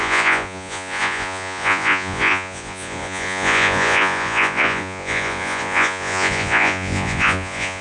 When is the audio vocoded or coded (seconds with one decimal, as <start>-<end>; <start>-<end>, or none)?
0.0-7.8